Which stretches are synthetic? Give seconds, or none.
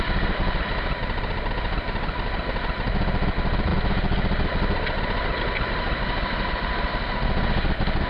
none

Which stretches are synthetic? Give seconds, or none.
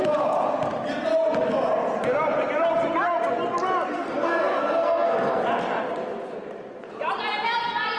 3.9-5.4 (codec, SNAC)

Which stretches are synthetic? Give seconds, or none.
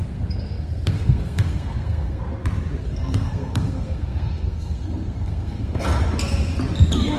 0.0-2.2 (codec, SNAC); 2.8-5.8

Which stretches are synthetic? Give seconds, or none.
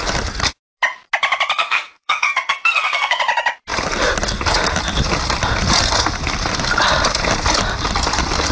1.6-3.2 (codec, SNAC)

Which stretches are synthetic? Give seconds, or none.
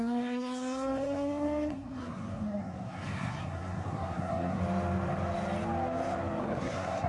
0.0-4.6 (codec, SNAC); 6.4-7.1